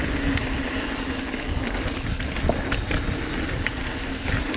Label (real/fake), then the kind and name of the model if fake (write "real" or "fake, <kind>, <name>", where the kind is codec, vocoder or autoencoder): real